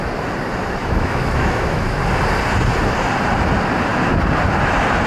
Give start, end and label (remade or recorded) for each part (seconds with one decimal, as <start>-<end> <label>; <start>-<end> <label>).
0.0-0.8 recorded; 0.8-2.0 remade; 2.0-5.1 recorded